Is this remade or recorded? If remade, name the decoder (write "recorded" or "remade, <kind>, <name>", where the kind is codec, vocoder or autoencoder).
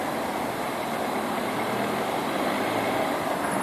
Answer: remade, vocoder, BigVGAN v2